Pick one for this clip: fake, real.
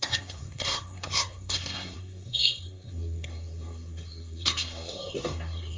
fake